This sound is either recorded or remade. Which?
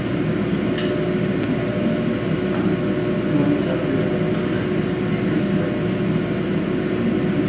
recorded